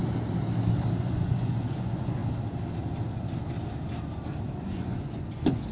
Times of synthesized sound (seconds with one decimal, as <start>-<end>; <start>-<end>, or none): 1.0-2.2; 4.7-5.7